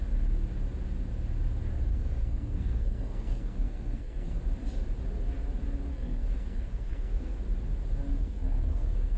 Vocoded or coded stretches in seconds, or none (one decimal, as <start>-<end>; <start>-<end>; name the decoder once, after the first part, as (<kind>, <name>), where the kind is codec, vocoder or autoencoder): 1.9-4.4 (codec, SNAC); 5.9-7.4; 8.2-9.2